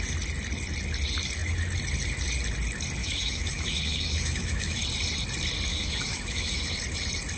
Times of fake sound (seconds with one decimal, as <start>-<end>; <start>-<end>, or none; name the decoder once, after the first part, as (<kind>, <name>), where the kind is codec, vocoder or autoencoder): 3.0-4.8 (autoencoder, DAC-VAE); 5.7-6.7